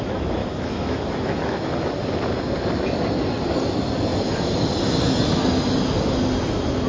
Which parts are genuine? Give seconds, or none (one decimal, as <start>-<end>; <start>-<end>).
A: 0.0-0.4; 1.9-6.9